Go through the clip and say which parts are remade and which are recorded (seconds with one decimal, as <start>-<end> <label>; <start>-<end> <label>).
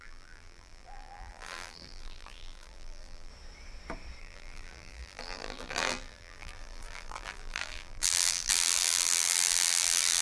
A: 0.0-3.3 remade; 3.3-4.2 recorded; 4.2-10.2 remade